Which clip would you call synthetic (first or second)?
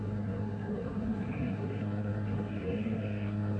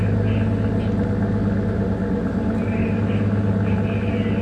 first